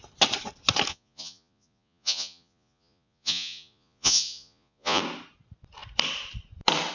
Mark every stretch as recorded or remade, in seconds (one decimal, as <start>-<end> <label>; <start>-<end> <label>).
0.0-0.9 recorded; 0.9-5.0 remade; 5.0-6.9 recorded